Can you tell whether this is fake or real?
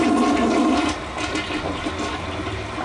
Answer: real